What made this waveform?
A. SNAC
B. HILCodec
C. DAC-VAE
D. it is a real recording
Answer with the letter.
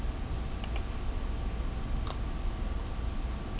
D